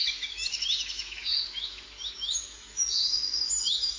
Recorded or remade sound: remade